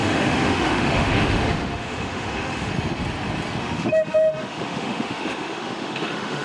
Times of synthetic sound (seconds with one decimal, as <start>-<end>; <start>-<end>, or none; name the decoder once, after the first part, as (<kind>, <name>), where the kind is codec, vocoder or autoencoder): 0.0-2.7 (autoencoder, DAC-VAE); 3.6-6.4